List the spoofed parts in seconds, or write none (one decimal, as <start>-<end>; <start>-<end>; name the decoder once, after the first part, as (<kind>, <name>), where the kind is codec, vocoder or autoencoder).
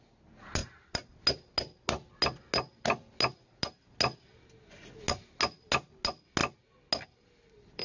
none